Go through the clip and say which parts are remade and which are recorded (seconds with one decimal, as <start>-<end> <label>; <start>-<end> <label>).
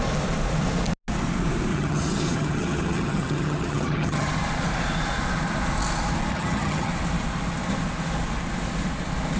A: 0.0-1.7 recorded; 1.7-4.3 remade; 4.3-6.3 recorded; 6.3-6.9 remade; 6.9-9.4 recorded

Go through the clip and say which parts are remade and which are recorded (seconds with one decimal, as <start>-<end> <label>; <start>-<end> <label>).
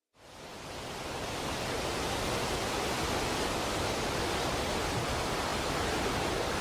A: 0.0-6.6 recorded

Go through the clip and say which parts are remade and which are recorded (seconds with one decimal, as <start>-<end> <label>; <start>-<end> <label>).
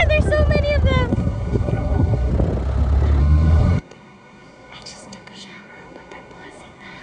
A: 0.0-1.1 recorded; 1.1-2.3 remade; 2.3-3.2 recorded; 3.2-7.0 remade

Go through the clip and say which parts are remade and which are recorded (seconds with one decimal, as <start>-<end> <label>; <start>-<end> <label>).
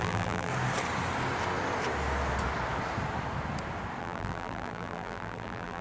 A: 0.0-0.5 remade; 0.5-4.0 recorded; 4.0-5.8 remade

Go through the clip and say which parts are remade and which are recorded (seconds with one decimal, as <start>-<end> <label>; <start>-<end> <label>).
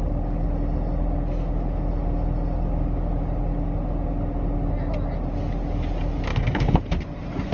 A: 0.0-6.3 recorded; 6.3-6.8 remade; 6.8-7.5 recorded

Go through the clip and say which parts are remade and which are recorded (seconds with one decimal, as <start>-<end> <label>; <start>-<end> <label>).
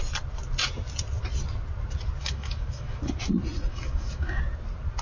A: 0.0-2.2 recorded; 2.2-3.0 remade; 3.0-3.7 recorded; 3.7-4.4 remade; 4.4-5.0 recorded